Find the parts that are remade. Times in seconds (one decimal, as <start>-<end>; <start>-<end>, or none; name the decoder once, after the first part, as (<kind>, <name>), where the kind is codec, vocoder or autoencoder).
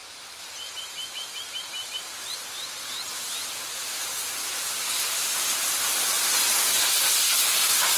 none